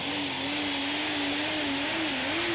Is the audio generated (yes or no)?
no